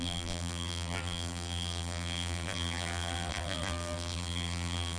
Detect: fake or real fake